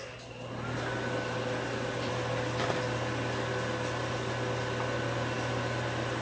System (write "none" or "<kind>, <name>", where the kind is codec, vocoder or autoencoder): none